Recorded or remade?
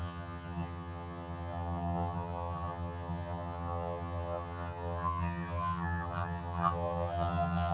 remade